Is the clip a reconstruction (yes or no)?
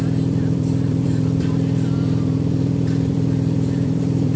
yes